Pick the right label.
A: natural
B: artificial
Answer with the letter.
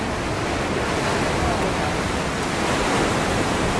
A